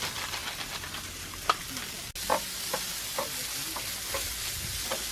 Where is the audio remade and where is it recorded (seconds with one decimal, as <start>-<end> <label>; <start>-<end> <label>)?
0.0-5.1 recorded